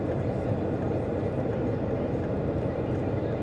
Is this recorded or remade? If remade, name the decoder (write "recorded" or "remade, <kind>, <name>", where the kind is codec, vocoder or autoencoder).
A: recorded